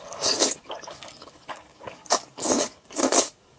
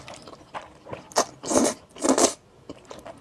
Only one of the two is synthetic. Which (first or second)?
first